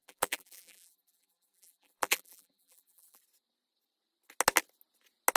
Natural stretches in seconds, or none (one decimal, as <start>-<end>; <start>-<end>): 3.2-5.4